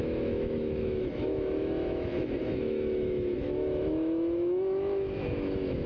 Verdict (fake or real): fake